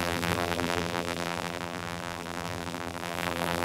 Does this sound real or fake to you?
fake